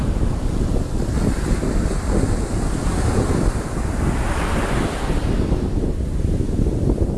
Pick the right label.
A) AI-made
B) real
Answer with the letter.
B